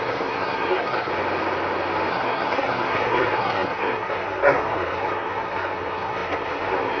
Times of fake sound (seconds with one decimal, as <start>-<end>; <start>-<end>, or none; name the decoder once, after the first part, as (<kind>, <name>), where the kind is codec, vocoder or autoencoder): 0.0-1.1 (codec, SNAC); 2.1-7.0